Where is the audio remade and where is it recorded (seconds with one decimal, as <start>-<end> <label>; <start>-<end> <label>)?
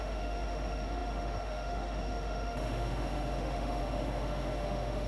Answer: 0.0-5.1 remade